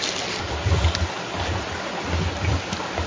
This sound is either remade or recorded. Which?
recorded